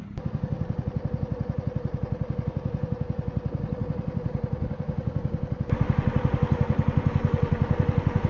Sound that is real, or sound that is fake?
real